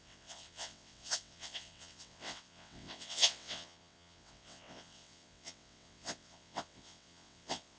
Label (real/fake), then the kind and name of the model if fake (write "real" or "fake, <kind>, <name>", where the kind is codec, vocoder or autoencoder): fake, vocoder, WaveNeXt